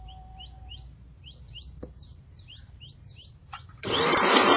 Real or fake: fake